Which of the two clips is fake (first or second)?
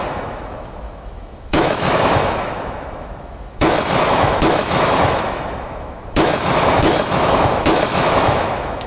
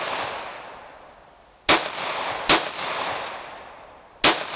first